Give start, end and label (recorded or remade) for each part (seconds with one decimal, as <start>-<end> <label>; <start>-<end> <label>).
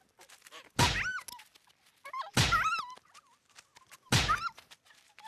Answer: 0.0-5.3 recorded